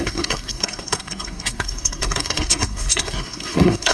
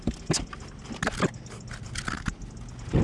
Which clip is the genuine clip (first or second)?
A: second